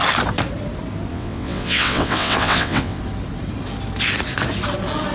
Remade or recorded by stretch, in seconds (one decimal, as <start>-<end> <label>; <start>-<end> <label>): 0.0-1.1 recorded; 1.1-3.0 remade; 3.0-5.1 recorded